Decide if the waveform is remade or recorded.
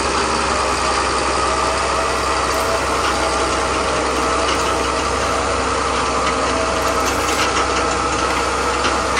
recorded